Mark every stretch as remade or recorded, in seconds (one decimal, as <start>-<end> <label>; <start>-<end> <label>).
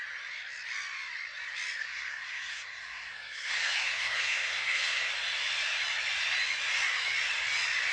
0.0-1.8 recorded; 1.8-5.1 remade; 5.1-7.9 recorded